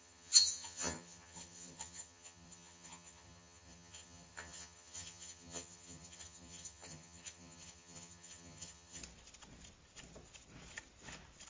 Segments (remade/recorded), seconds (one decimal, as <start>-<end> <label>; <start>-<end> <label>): 0.0-9.0 remade; 9.0-11.5 recorded